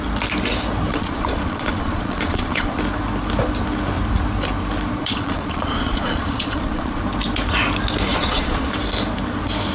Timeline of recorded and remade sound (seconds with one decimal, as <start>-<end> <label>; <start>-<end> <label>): 0.0-0.9 recorded; 0.9-2.8 remade; 2.8-5.0 recorded; 5.0-7.0 remade; 7.0-8.1 recorded; 8.1-8.7 remade; 8.7-9.7 recorded